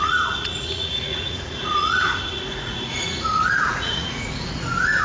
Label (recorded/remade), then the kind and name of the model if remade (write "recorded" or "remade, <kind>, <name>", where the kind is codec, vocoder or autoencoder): remade, vocoder, Vocos